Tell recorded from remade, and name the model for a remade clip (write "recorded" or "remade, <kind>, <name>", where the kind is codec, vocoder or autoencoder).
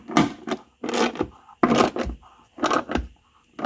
recorded